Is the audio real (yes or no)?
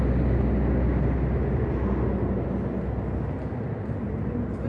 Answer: yes